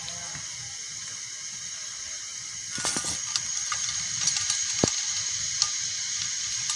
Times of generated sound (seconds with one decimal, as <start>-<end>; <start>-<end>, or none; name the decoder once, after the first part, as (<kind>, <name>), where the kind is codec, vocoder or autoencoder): 2.3-5.8 (vocoder, BigVGAN v2)